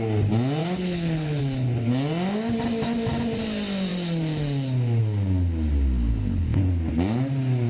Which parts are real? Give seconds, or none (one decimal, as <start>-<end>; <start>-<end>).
0.0-0.6; 1.4-6.1; 6.7-7.7